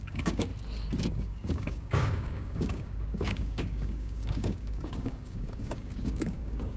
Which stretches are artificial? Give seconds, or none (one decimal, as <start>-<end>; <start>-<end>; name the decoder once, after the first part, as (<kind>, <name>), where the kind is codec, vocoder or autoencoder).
0.0-0.5 (codec, DAC); 1.0-6.8